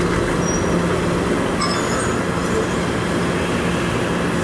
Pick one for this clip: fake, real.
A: real